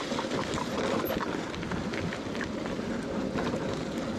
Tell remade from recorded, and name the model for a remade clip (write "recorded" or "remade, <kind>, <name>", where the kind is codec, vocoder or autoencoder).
recorded